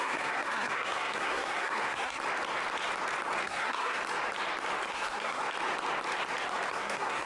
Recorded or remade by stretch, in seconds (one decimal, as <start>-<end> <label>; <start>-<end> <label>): 0.0-2.2 remade; 2.2-3.4 recorded; 3.4-4.0 remade; 4.0-4.9 recorded; 4.9-5.4 remade; 5.4-6.7 recorded; 6.7-7.3 remade